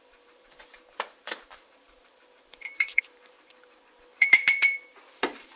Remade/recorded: remade